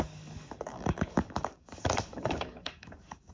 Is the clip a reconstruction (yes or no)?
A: yes